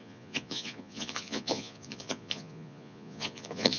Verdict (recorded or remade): remade